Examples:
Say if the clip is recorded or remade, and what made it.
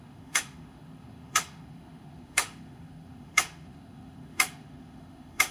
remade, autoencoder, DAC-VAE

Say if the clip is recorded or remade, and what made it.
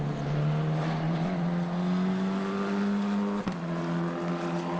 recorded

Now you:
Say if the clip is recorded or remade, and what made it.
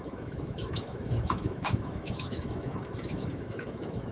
remade, autoencoder, DAC-VAE